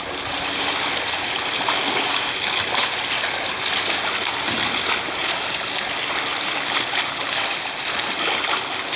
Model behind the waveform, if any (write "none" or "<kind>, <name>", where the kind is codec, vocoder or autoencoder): none